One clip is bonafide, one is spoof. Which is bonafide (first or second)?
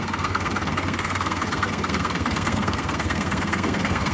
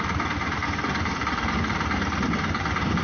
second